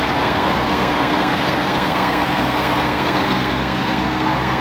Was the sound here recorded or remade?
remade